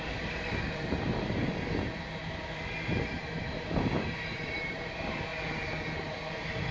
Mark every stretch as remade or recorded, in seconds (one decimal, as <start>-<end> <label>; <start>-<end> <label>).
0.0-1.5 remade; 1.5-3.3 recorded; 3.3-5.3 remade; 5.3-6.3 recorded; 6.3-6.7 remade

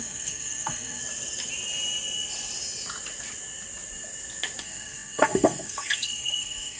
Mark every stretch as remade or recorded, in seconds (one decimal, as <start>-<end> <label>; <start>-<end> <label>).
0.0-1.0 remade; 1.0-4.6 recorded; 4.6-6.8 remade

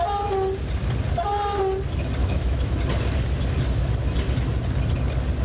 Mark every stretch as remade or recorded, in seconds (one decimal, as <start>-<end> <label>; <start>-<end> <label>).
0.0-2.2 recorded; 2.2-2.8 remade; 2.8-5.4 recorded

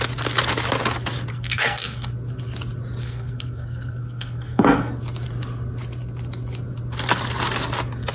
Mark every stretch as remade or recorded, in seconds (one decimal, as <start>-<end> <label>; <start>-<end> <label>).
0.0-1.3 recorded; 1.3-2.1 remade; 2.1-3.0 recorded; 3.0-4.9 remade; 4.9-8.1 recorded

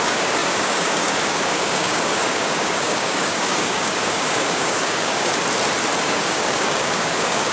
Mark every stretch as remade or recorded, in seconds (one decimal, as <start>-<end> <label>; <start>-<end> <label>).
0.0-5.3 remade; 5.3-6.0 recorded; 6.0-7.5 remade